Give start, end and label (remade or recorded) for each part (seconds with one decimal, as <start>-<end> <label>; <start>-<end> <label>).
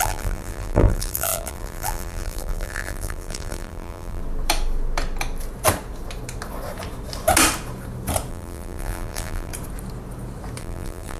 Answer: 0.0-4.2 remade; 4.2-8.3 recorded; 8.3-9.5 remade; 9.5-10.6 recorded; 10.6-11.2 remade